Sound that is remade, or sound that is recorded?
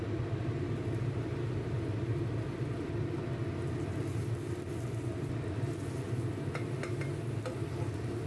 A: recorded